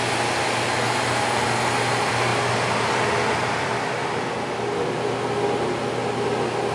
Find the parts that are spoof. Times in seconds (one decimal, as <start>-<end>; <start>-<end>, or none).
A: none